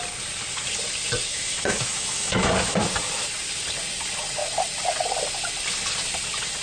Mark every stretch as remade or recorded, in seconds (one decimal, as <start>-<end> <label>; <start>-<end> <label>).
0.0-1.3 recorded; 1.3-2.5 remade; 2.5-6.6 recorded